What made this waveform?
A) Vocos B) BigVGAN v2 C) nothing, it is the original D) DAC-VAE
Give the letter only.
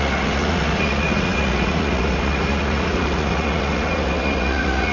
A